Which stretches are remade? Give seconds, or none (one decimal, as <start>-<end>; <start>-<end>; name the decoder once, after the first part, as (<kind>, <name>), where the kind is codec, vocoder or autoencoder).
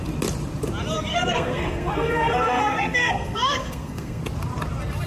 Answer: 1.1-4.2 (codec, SNAC)